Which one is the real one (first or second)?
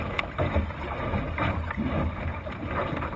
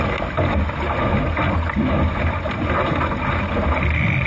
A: second